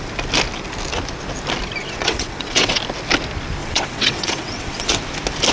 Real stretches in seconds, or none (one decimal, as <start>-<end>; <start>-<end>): 0.0-1.8; 2.8-3.6; 5.0-5.5